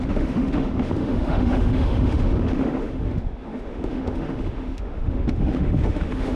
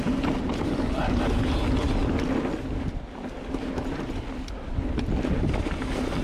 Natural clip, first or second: second